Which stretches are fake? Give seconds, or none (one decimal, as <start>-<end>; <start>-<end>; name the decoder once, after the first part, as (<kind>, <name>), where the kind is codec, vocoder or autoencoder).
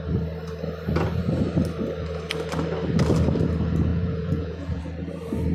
3.9-4.8 (vocoder, Vocos)